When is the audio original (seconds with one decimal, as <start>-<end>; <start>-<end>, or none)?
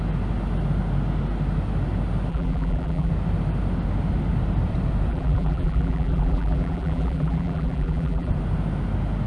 0.0-2.3; 3.1-5.1; 8.3-9.3